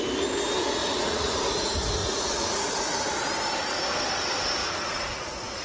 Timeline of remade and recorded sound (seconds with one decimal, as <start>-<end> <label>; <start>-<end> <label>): 0.0-0.8 recorded; 0.8-1.4 remade; 1.4-2.0 recorded; 2.0-3.0 remade; 3.0-4.6 recorded; 4.6-5.6 remade